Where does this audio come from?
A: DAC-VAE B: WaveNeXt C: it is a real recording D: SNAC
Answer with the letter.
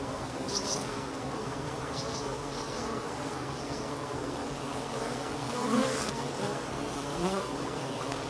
D